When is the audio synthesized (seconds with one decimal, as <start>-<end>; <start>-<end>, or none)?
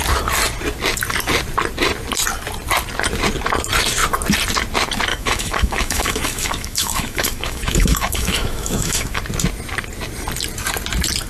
5.1-9.2